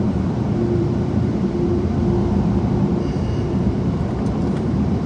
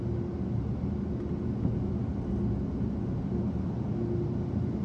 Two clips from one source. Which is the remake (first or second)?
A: first